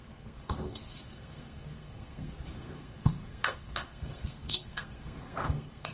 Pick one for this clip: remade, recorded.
remade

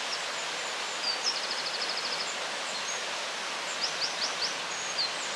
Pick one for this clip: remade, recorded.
recorded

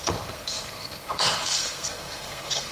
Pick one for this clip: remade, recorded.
remade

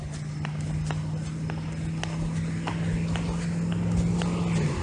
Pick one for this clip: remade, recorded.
recorded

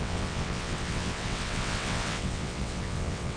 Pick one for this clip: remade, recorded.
remade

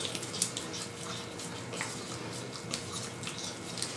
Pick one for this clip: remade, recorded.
recorded